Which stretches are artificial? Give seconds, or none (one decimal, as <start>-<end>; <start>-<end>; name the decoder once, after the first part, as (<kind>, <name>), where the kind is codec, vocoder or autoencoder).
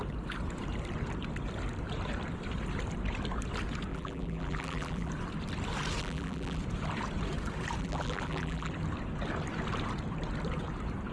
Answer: 3.9-5.1 (vocoder, BigVGAN v2); 6.0-6.6; 7.8-8.7